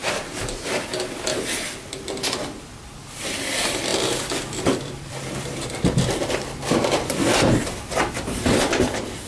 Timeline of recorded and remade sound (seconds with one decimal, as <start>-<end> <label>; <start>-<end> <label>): 0.0-0.7 remade; 0.7-3.9 recorded; 3.9-8.0 remade; 8.0-9.3 recorded